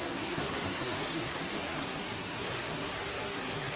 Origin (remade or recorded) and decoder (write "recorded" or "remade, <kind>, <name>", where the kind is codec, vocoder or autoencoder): remade, codec, SNAC